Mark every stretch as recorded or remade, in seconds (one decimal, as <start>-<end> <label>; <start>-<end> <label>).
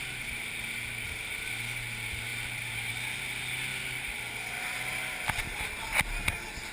0.0-6.7 recorded